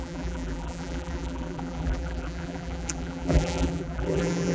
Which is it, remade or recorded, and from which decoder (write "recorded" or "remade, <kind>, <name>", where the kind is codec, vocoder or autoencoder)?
remade, vocoder, BigVGAN v2